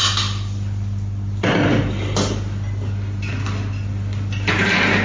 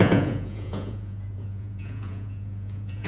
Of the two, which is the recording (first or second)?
first